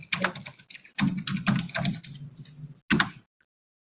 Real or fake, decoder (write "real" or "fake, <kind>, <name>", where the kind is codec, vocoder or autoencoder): real